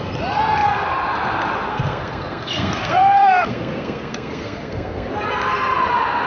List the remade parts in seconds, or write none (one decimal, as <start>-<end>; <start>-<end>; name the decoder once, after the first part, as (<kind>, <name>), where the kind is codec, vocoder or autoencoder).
1.7-5.1 (codec, SNAC)